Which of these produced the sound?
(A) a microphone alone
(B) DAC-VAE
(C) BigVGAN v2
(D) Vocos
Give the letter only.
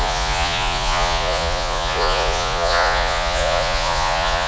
D